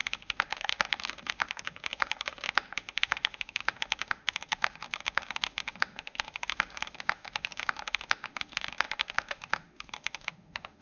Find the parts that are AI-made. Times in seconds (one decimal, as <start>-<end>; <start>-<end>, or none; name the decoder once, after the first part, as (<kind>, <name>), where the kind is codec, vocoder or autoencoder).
0.0-10.8 (autoencoder, DAC-VAE)